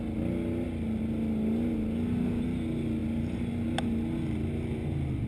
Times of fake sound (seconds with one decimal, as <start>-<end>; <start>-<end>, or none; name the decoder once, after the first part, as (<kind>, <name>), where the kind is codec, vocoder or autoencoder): none